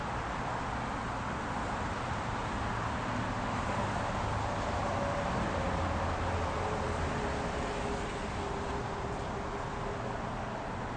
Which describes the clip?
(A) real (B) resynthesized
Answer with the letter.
A